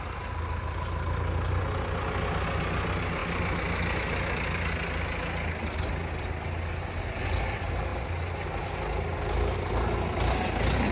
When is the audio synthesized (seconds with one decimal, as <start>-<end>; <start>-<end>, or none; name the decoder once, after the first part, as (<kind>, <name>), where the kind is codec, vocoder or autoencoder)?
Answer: none